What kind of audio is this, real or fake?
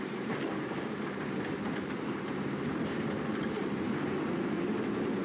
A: fake